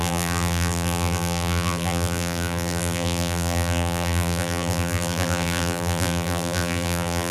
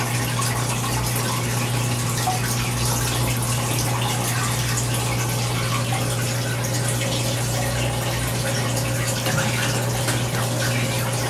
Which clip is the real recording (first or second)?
second